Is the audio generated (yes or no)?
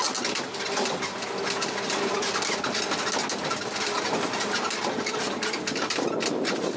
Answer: no